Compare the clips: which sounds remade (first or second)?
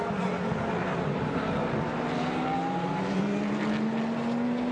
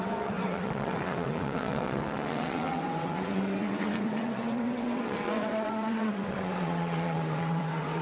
second